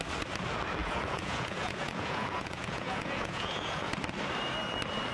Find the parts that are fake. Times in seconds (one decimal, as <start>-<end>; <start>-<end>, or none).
0.8-3.9